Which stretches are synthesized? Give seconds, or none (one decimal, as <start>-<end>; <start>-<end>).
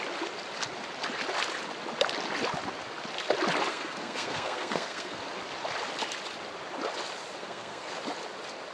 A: 3.7-5.2; 7.4-7.9